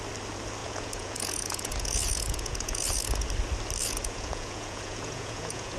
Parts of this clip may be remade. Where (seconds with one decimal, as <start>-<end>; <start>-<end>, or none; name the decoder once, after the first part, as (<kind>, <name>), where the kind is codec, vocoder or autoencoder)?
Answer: 0.6-3.3 (vocoder, Vocos); 3.8-5.8